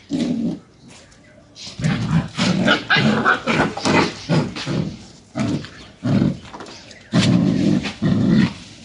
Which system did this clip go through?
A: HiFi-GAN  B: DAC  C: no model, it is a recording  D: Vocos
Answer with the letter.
C